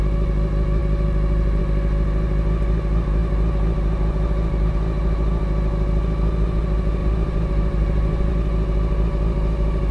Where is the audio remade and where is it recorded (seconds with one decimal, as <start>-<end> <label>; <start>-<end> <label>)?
0.0-7.0 recorded; 7.0-8.3 remade; 8.3-9.9 recorded